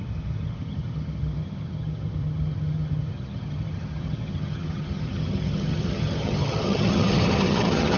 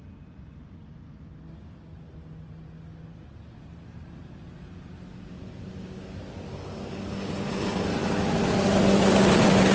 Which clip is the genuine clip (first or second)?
second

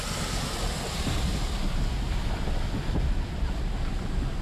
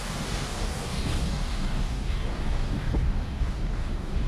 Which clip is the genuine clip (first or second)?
first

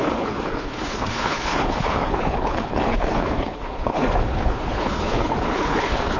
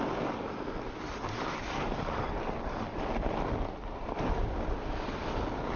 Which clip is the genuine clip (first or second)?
second